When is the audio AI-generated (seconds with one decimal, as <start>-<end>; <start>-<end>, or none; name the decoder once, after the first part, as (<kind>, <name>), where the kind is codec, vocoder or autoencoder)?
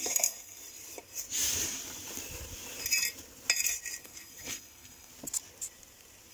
0.0-0.6 (codec, SNAC); 4.0-5.1